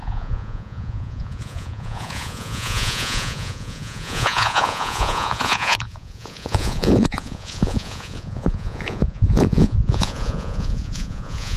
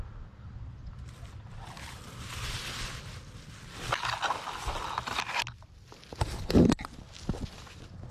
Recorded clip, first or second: second